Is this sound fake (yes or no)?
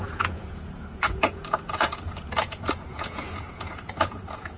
yes